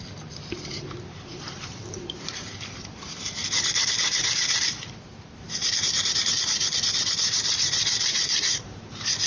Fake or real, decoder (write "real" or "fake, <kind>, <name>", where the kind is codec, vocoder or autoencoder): fake, vocoder, BigVGAN v2